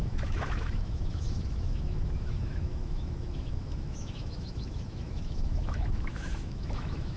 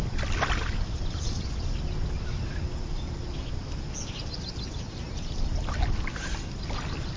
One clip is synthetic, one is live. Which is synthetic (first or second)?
first